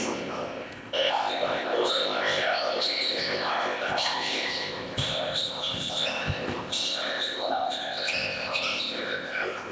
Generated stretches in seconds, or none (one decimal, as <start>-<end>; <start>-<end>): 0.0-9.7